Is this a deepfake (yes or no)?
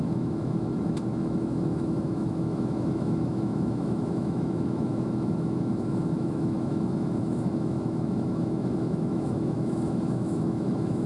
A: yes